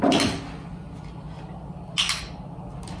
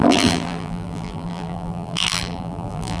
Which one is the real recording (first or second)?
first